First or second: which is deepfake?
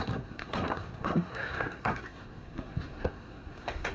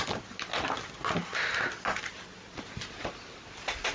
first